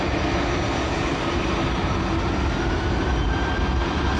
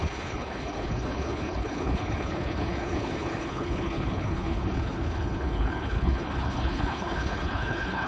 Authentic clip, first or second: first